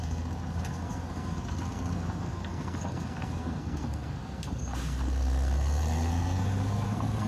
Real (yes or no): no